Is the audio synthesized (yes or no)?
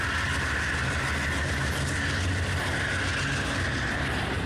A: no